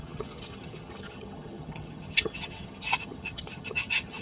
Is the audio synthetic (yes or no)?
yes